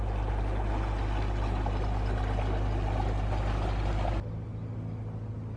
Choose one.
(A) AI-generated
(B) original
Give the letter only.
B